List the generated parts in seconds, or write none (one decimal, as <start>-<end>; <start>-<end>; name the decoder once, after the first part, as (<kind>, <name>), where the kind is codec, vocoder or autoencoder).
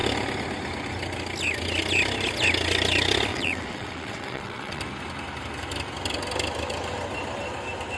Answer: 3.3-4.8 (vocoder, WaveNeXt)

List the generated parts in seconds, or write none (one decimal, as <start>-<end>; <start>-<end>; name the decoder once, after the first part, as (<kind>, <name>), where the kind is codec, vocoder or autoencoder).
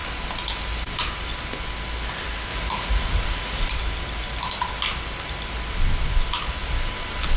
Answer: 2.5-3.7 (vocoder, Vocos)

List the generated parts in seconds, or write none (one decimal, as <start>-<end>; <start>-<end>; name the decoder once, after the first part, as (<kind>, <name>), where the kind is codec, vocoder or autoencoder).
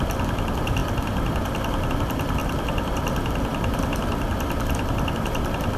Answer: none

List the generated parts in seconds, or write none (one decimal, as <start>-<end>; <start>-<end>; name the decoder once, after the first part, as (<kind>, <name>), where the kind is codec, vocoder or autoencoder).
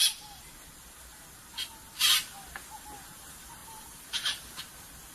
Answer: 3.6-4.6 (vocoder, BigVGAN v2)